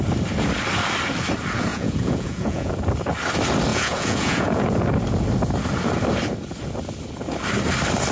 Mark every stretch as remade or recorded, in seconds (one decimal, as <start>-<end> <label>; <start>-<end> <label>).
0.0-1.7 recorded; 1.7-2.7 remade; 2.7-3.7 recorded; 3.7-4.8 remade; 4.8-8.1 recorded